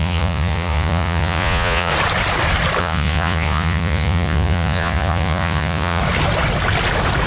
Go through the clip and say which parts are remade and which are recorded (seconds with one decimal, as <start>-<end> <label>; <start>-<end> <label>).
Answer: 0.0-1.9 remade; 1.9-2.8 recorded; 2.8-6.0 remade; 6.0-7.3 recorded